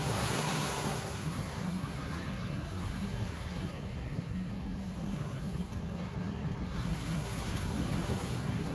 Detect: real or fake fake